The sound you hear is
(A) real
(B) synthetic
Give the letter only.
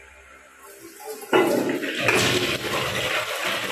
A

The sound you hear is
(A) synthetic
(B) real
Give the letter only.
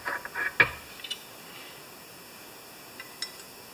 B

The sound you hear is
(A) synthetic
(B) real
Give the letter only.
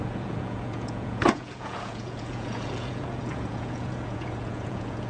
A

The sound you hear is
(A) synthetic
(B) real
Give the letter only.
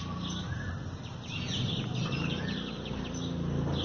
B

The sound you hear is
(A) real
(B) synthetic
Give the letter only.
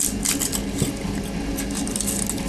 A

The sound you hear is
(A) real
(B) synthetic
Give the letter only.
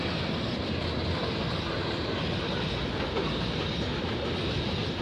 A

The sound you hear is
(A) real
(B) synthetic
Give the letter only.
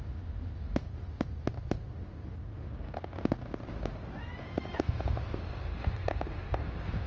A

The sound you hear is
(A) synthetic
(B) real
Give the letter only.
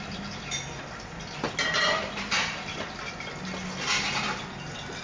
B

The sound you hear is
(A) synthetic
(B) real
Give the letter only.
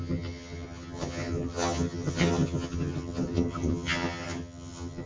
A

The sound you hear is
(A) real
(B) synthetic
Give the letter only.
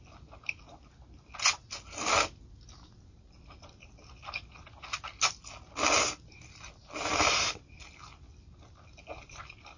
A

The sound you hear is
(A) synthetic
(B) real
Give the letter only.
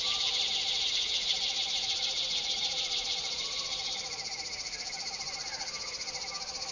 B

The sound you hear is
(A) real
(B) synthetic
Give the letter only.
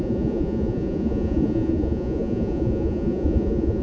B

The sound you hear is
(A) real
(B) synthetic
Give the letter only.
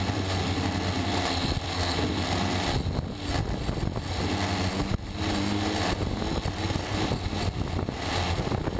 A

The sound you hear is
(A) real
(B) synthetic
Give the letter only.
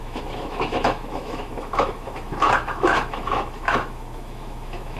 B